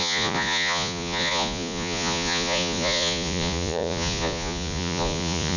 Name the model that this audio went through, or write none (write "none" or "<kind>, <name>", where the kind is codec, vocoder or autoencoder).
vocoder, Vocos